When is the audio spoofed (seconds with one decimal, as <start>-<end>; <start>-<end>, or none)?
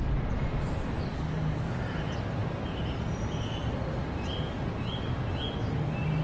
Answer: 1.1-1.7